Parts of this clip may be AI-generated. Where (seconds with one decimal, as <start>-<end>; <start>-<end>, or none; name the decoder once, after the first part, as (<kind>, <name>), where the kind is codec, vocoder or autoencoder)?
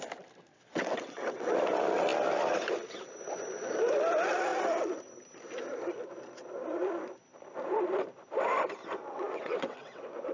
0.5-1.5 (vocoder, WaveNeXt); 9.0-10.3